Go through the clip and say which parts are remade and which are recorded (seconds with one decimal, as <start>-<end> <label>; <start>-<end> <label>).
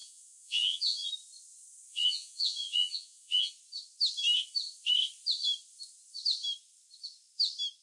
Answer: 0.0-1.1 remade; 1.1-1.9 recorded; 1.9-3.5 remade; 3.5-7.8 recorded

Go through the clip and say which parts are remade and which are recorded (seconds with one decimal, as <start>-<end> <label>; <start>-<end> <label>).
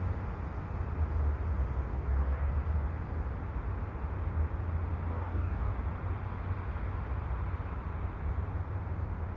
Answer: 0.0-1.9 recorded; 1.9-2.5 remade; 2.5-5.1 recorded; 5.1-5.7 remade; 5.7-9.4 recorded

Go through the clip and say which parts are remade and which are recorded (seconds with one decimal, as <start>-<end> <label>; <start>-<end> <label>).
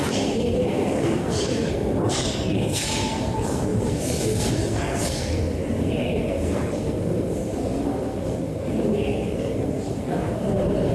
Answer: 0.0-10.9 remade